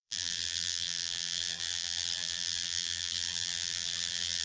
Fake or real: fake